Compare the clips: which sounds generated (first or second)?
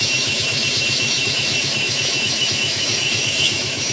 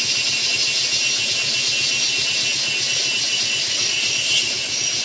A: first